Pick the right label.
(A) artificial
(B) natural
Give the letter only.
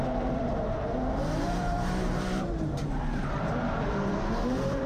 A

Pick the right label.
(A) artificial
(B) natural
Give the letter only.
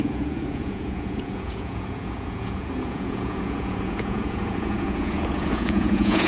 A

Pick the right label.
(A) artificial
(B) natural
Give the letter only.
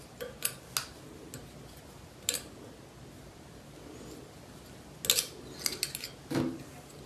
B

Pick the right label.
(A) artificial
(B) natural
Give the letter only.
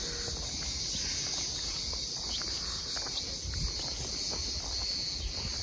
B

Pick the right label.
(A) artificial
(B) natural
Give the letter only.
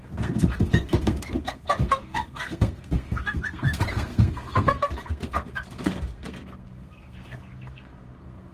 A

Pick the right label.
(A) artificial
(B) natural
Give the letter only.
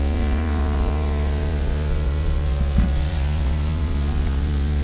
A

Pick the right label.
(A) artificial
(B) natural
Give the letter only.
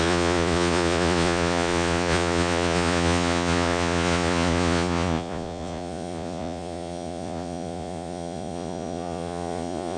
A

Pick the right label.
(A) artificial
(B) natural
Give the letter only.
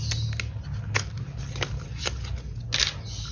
B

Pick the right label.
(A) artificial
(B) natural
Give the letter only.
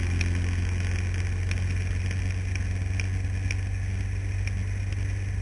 B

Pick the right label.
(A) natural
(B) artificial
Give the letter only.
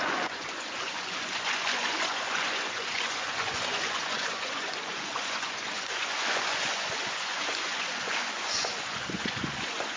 B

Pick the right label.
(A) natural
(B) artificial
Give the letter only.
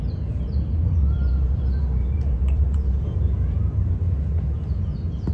B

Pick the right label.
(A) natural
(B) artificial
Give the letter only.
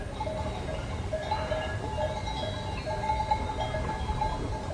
A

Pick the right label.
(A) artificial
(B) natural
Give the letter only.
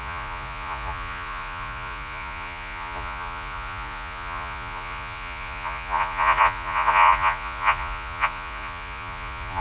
A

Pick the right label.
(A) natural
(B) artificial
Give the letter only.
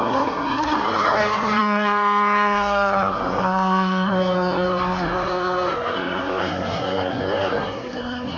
B